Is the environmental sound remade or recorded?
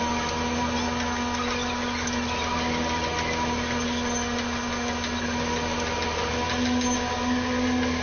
recorded